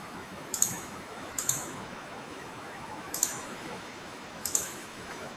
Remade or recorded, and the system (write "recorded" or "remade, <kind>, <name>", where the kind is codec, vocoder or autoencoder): remade, autoencoder, DAC-VAE